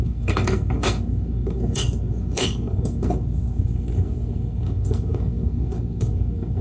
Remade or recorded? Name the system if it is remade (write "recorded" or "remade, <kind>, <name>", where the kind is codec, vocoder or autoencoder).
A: remade, codec, SNAC